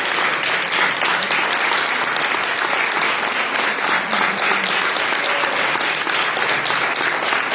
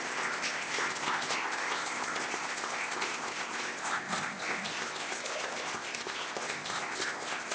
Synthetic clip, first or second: second